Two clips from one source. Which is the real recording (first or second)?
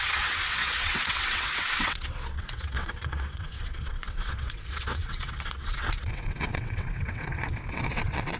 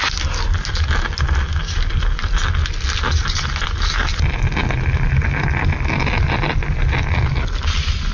second